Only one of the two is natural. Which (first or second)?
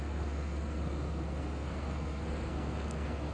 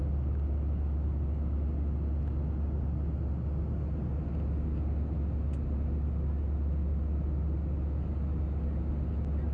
second